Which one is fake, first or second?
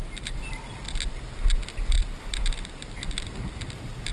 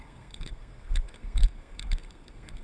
second